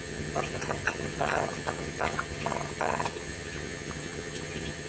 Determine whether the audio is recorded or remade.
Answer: remade